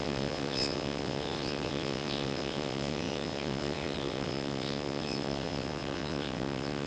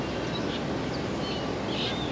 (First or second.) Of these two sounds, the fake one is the first